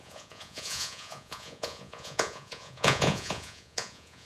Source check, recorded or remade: remade